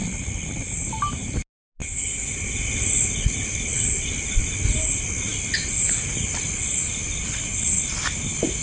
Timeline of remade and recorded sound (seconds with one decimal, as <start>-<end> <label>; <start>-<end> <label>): 0.0-8.6 recorded